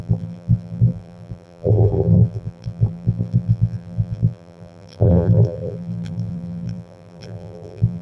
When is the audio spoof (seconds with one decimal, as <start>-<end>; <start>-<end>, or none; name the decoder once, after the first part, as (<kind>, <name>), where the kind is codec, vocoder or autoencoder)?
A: 0.0-8.0 (vocoder, BigVGAN v2)